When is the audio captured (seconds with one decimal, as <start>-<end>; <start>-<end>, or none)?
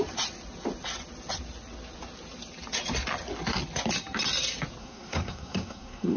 0.0-4.8